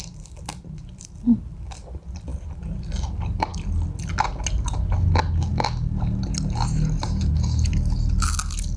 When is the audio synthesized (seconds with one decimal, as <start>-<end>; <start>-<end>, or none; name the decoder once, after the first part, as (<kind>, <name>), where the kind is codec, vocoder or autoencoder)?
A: 2.3-2.8 (vocoder, BigVGAN v2)